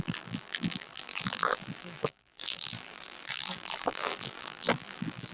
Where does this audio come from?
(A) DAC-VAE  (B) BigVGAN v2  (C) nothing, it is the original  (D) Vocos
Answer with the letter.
B